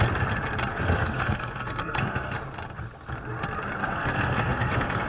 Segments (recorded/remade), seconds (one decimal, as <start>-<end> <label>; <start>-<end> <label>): 0.0-0.7 recorded; 0.7-2.4 remade; 2.4-3.8 recorded; 3.8-5.1 remade